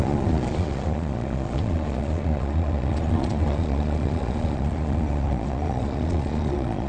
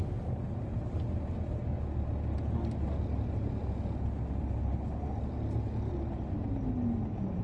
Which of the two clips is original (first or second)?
second